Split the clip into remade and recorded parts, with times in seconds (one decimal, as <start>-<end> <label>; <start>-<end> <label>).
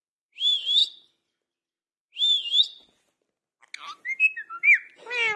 0.0-5.4 recorded